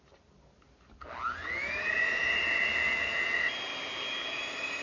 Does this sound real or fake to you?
real